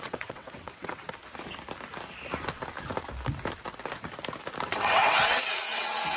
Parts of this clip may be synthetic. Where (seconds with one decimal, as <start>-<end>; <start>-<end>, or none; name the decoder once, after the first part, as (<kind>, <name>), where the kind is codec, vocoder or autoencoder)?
0.0-1.0 (vocoder, WaveNeXt); 4.7-6.2